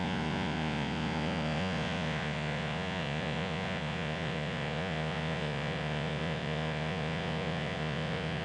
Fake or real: fake